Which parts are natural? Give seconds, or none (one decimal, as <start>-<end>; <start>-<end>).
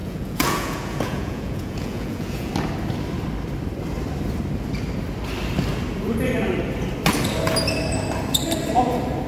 2.5-9.3